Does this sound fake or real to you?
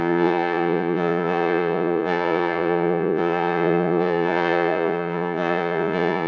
fake